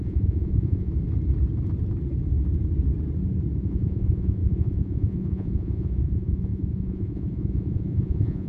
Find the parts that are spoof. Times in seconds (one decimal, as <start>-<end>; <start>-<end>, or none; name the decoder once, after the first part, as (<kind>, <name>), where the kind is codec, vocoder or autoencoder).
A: 0.0-0.9 (vocoder, Vocos); 3.6-8.5